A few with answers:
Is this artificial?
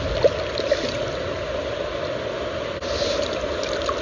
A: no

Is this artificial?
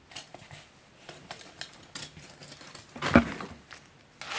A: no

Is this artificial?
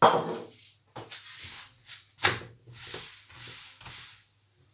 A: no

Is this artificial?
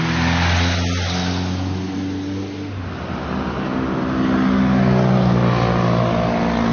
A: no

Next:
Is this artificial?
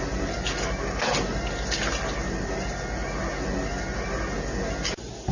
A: no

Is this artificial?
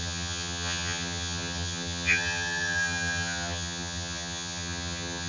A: yes